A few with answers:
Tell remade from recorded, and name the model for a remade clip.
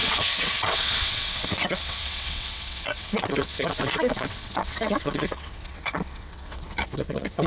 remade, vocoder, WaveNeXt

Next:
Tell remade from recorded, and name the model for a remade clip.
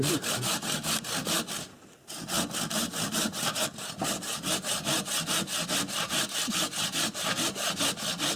recorded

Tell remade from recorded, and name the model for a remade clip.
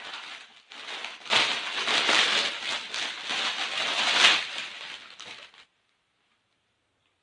recorded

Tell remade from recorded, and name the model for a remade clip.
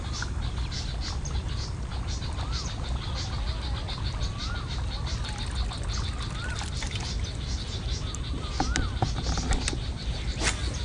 recorded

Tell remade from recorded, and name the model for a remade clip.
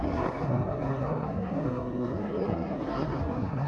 remade, codec, SNAC